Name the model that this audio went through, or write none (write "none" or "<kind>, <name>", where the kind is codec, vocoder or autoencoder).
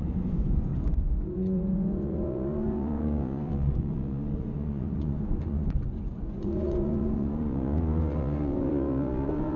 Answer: vocoder, Vocos